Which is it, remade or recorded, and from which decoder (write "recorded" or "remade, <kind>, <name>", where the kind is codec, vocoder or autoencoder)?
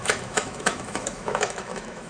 remade, autoencoder, DAC-VAE